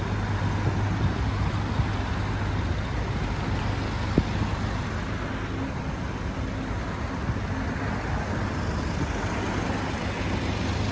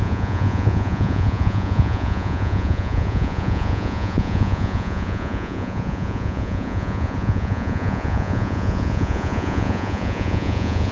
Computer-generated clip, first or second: second